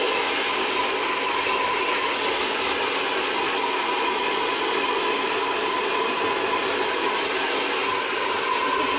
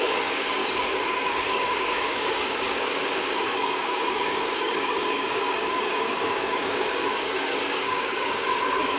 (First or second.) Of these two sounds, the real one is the first